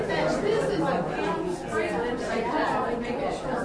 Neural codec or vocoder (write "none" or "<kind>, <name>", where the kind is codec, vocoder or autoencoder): none